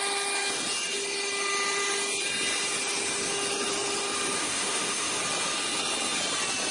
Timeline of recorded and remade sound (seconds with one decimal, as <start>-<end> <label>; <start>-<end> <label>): 0.0-4.4 recorded; 4.4-5.2 remade; 5.2-6.7 recorded